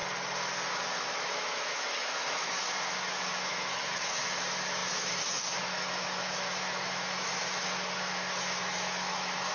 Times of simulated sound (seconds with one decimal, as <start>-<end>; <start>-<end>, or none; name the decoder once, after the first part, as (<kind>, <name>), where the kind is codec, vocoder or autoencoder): 0.7-9.5 (autoencoder, DAC-VAE)